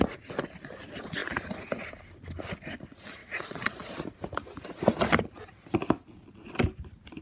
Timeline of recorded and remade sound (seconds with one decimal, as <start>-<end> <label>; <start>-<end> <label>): 0.0-3.2 recorded; 3.2-3.9 remade; 3.9-7.2 recorded